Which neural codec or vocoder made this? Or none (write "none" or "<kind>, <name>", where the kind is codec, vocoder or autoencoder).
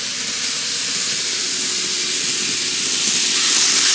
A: none